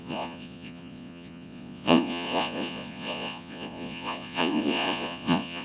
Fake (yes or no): yes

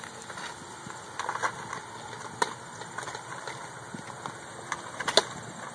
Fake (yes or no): no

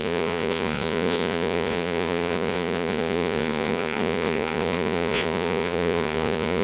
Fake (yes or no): yes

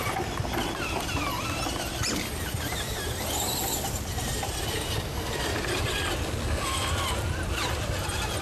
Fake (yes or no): no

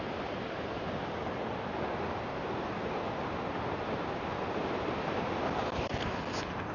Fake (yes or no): no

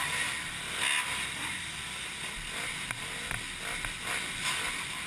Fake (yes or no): no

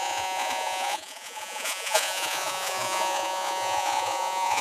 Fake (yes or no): yes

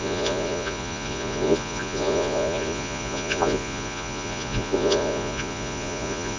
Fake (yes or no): yes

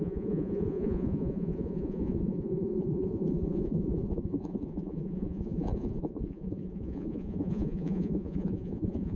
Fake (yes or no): yes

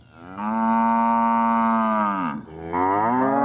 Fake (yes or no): no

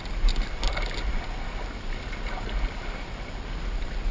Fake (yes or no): no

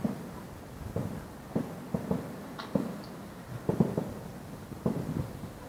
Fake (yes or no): no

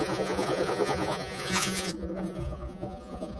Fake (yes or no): yes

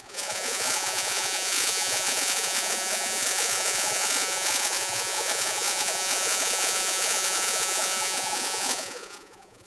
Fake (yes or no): yes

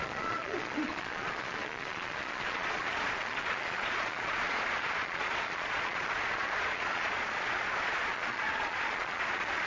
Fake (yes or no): yes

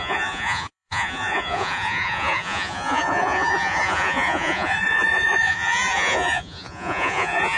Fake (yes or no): yes